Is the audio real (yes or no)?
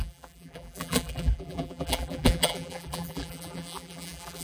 no